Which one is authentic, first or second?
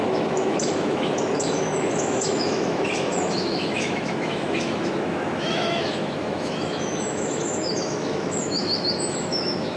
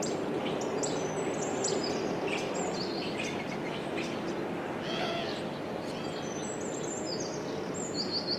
second